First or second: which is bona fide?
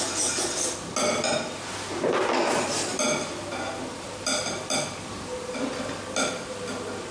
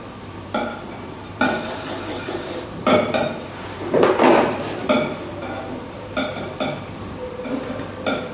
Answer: first